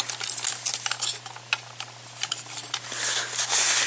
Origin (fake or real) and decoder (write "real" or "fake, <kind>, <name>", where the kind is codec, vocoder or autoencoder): real